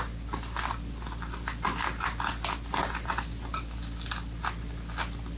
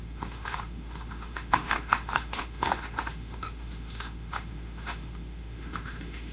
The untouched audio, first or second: first